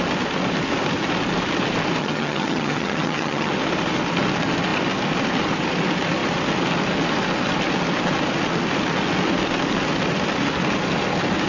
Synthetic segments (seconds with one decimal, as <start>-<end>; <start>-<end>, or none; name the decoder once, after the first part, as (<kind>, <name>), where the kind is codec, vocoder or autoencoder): 2.0-3.5 (vocoder, HiFi-GAN)